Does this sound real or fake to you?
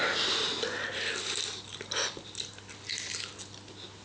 real